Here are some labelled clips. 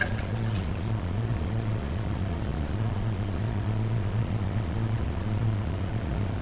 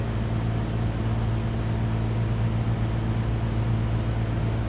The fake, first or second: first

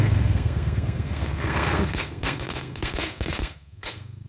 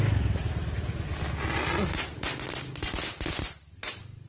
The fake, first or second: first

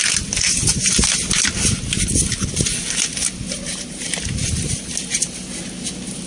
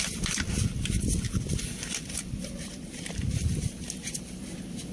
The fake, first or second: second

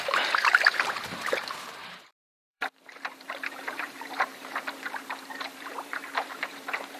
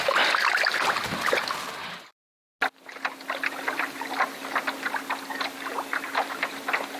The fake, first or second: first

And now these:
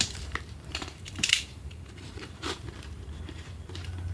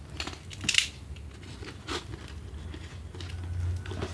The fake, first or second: first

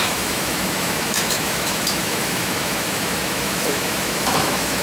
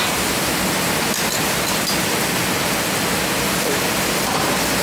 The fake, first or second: first